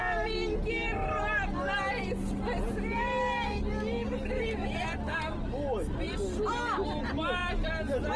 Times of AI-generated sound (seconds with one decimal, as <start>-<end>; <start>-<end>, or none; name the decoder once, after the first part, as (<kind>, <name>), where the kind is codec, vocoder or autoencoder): none